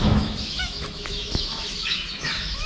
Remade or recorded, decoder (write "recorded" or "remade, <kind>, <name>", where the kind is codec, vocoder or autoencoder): remade, autoencoder, DAC-VAE